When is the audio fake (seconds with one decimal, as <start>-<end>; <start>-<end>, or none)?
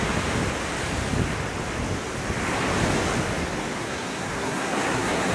3.8-5.3